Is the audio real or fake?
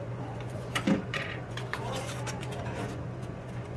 fake